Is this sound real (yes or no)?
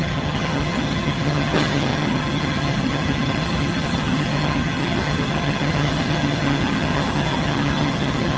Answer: no